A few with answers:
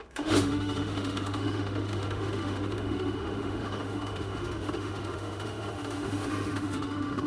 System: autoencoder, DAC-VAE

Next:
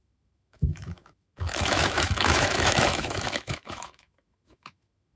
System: autoencoder, DAC-VAE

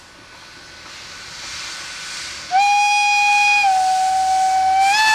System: none